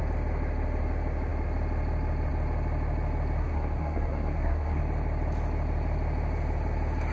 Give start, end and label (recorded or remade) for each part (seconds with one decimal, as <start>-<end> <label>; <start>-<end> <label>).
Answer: 0.0-3.4 recorded; 3.4-4.8 remade; 4.8-7.1 recorded